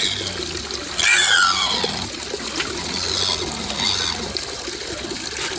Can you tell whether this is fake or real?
real